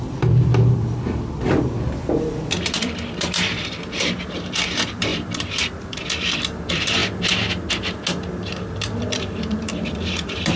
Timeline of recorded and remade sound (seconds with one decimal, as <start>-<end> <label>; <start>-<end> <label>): 0.0-5.1 remade; 5.1-5.7 recorded; 5.7-7.0 remade; 7.0-8.8 recorded; 8.8-10.6 remade